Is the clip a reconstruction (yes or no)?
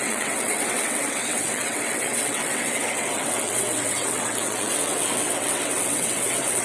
yes